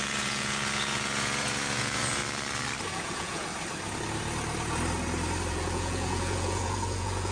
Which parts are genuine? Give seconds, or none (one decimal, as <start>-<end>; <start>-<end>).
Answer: 2.2-2.9; 3.5-5.5